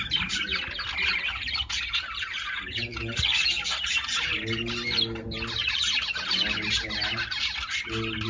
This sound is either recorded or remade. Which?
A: recorded